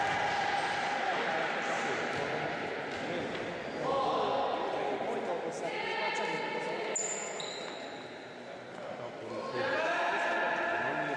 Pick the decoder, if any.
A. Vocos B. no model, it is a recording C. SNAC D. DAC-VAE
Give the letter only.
B